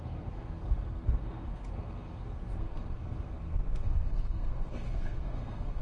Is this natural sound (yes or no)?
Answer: no